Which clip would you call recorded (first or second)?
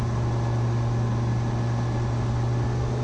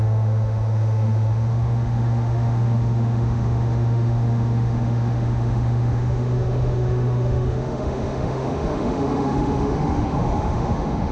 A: first